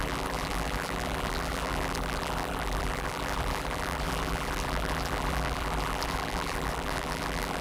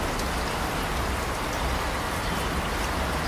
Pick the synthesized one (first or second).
first